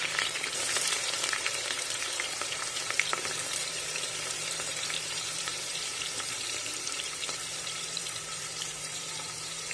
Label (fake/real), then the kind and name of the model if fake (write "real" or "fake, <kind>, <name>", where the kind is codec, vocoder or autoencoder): fake, vocoder, BigVGAN v2